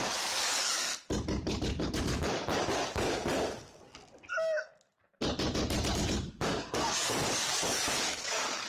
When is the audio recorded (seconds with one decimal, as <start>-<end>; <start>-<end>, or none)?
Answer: 0.9-2.0; 3.3-5.9

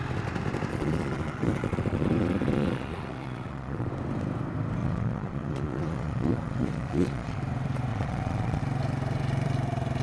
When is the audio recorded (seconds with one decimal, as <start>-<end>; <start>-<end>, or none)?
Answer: 0.0-0.7; 3.9-4.8; 7.4-7.9; 8.6-10.0

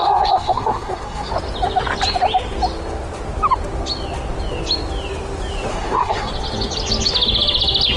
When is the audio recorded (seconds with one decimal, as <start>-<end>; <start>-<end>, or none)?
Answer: 1.3-5.7; 6.3-8.0